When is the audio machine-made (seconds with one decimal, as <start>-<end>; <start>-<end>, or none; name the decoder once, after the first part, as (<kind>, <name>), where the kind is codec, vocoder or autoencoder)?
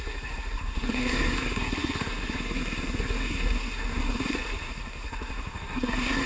0.0-6.3 (codec, SNAC)